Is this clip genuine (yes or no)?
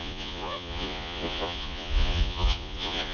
no